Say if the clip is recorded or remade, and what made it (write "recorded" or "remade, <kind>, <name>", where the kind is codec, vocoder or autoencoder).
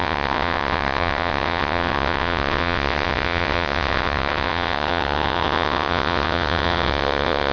remade, vocoder, WaveNeXt